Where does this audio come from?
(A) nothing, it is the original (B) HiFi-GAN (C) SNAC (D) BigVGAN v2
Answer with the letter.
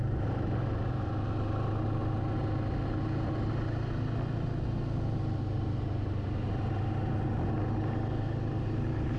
A